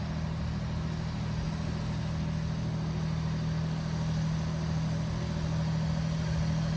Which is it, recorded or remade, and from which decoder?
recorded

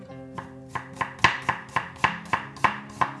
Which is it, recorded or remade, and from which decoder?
recorded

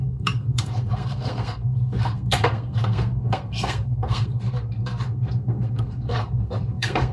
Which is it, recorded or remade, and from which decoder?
remade, codec, SNAC